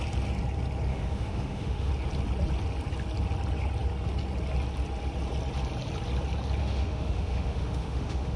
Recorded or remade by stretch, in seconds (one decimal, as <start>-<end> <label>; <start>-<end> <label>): 0.0-0.9 recorded; 0.9-1.9 remade; 1.9-6.6 recorded; 6.6-8.4 remade